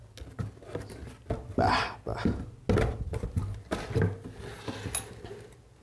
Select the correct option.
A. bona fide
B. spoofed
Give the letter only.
A